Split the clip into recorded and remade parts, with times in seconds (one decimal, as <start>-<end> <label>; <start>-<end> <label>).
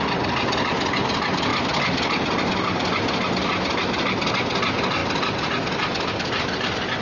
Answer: 0.0-7.0 recorded